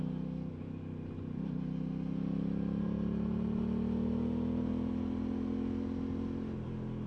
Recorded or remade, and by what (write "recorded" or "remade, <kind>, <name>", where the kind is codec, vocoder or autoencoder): recorded